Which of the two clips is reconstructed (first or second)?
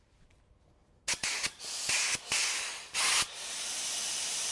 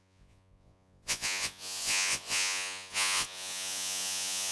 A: second